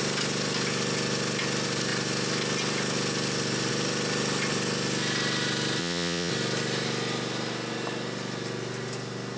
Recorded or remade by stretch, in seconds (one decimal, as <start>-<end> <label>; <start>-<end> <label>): 0.0-5.8 recorded; 5.8-6.3 remade; 6.3-9.4 recorded